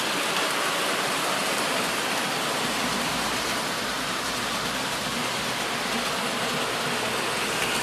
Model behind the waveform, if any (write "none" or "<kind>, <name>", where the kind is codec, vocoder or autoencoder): vocoder, BigVGAN v2